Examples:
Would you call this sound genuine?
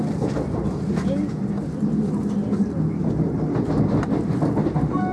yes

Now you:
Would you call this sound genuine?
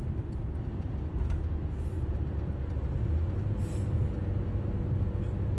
yes